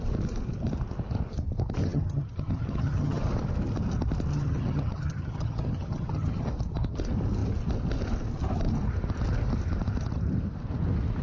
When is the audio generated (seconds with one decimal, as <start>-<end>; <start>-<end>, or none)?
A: 1.8-3.2; 4.3-6.5